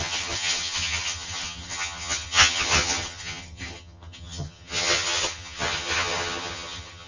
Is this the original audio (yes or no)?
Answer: no